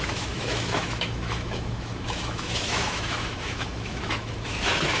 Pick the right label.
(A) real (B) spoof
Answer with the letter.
B